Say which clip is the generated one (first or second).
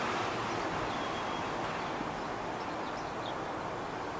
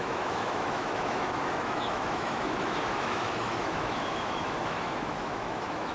second